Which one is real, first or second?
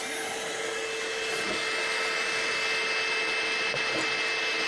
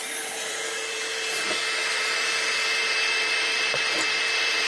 first